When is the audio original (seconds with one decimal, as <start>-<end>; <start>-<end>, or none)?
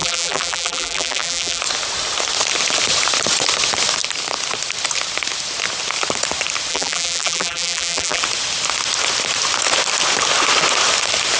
1.6-6.7; 8.2-11.4